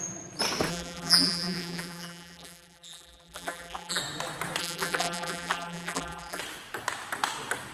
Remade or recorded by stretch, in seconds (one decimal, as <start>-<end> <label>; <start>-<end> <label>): 0.0-0.7 recorded; 0.7-4.0 remade; 4.0-4.6 recorded; 4.6-6.4 remade; 6.4-7.7 recorded